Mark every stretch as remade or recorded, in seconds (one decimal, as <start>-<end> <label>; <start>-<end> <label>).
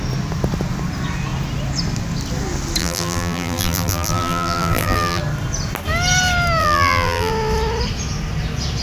0.0-2.8 recorded; 2.8-5.2 remade; 5.2-6.6 recorded; 6.6-7.3 remade; 7.3-8.8 recorded